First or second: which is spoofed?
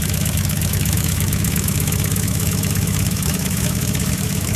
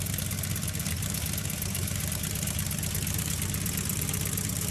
first